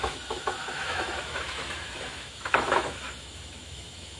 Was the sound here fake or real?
fake